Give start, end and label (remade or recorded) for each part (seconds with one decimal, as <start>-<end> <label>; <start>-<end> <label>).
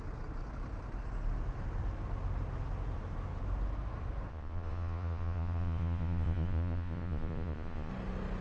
0.0-4.3 recorded; 4.3-7.9 remade; 7.9-8.4 recorded